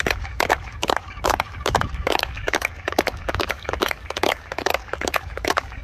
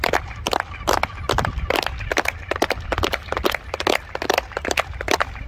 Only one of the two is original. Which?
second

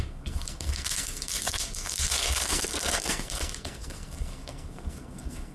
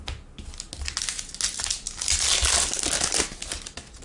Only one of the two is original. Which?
second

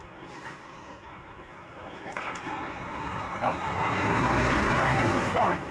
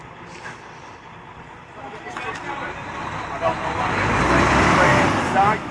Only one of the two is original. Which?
second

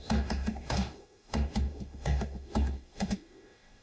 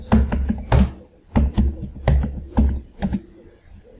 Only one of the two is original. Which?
second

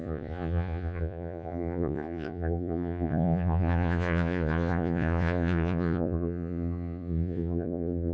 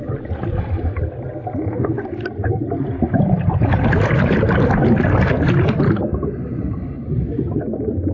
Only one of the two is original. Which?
second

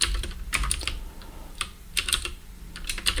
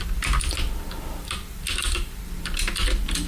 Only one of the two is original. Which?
second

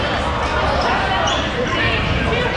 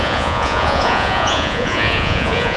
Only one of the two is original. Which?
first